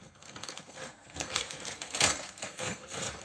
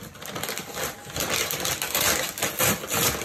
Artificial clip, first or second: first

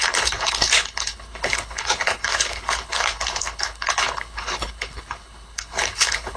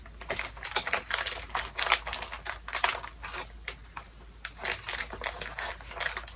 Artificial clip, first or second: first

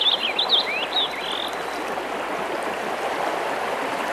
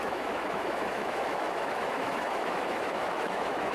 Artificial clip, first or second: second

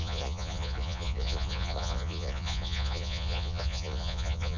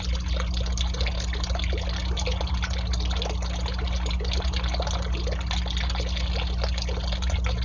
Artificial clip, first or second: first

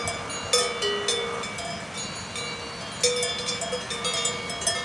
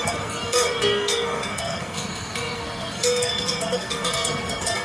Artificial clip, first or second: second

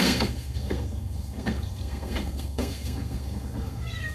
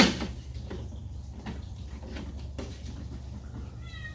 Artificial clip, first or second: first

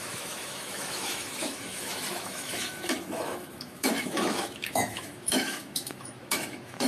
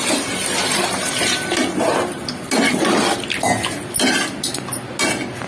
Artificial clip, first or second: first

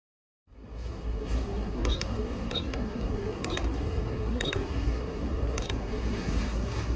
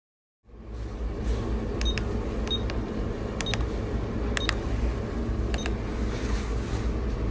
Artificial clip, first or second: first